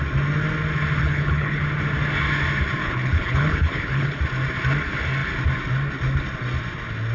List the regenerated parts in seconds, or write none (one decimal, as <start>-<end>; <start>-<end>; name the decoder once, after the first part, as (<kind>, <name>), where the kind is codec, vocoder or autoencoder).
1.0-1.6 (codec, HILCodec); 2.8-4.2